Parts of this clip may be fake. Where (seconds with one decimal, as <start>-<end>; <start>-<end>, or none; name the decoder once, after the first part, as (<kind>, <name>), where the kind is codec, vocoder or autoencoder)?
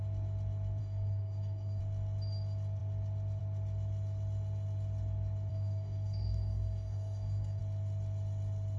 0.8-1.8 (codec, DAC); 5.5-7.6